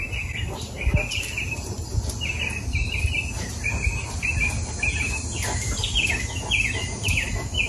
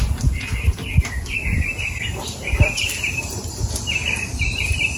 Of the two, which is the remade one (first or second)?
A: second